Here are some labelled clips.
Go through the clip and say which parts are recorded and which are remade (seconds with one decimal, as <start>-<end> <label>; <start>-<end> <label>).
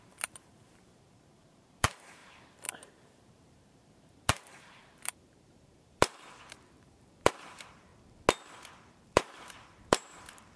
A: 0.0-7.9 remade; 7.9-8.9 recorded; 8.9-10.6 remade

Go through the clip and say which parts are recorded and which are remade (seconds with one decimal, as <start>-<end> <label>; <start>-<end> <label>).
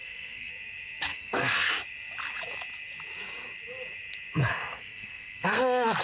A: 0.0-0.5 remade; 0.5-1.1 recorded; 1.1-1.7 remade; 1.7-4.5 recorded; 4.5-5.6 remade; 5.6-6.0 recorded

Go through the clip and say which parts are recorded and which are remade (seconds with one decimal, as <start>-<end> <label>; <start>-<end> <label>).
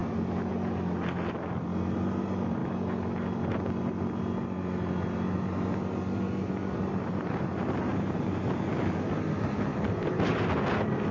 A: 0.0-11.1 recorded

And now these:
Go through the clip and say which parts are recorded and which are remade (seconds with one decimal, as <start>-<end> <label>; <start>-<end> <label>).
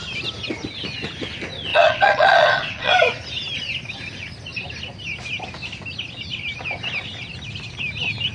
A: 0.0-1.7 recorded; 1.7-2.9 remade; 2.9-8.3 recorded